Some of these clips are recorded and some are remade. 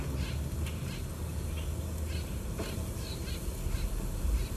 recorded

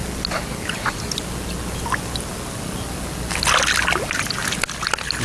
recorded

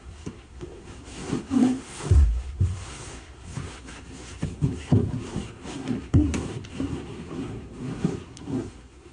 remade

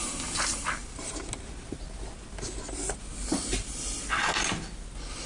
recorded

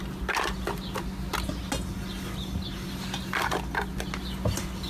recorded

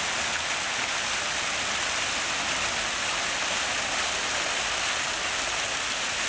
recorded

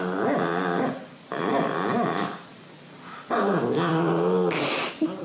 recorded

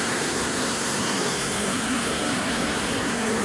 remade